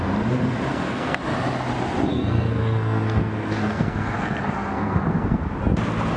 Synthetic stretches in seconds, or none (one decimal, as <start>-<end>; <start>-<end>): 0.7-1.2; 2.1-5.5